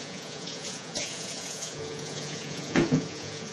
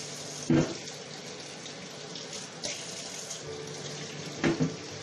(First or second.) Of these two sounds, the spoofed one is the first